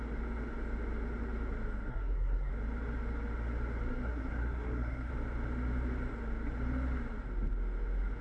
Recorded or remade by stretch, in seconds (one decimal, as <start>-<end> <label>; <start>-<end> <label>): 0.0-1.9 recorded; 1.9-2.5 remade; 2.5-3.9 recorded; 3.9-5.1 remade; 5.1-8.2 recorded